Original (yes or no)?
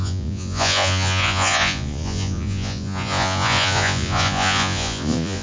no